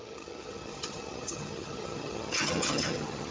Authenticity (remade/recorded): remade